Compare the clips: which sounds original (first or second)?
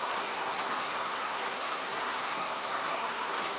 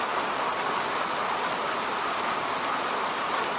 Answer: second